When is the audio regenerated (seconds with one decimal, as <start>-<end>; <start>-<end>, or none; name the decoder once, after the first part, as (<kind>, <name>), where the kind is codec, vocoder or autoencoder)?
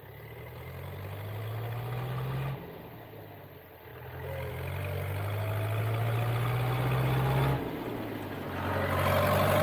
none